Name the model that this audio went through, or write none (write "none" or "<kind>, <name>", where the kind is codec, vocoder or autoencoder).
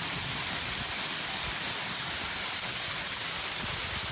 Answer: none